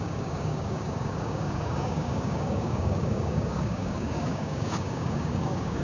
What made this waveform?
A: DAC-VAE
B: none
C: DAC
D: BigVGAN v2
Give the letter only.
C